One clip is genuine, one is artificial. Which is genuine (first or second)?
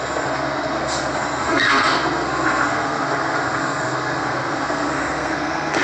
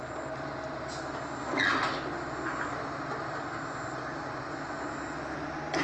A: second